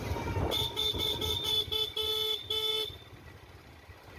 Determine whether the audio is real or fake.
real